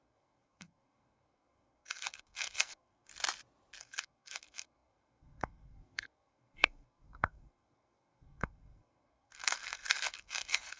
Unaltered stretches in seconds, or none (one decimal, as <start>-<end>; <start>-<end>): 3.1-3.8